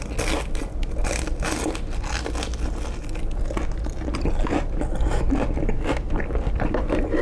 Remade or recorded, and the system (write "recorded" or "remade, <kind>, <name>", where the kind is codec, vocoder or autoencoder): recorded